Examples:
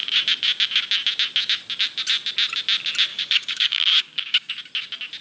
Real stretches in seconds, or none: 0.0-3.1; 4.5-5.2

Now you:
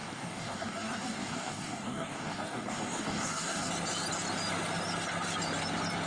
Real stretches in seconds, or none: 3.7-6.1

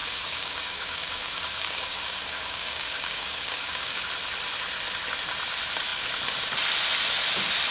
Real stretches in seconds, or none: 4.0-7.7

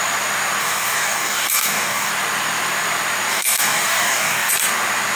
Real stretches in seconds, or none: 0.0-0.6; 2.1-3.3; 4.5-5.2

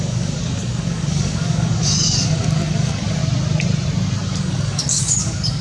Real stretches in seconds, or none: 3.2-4.4

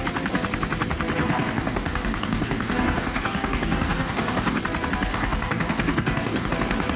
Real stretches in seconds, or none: 0.0-1.2; 4.6-5.1; 6.5-7.0